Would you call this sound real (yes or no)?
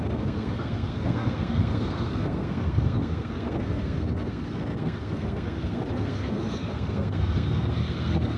no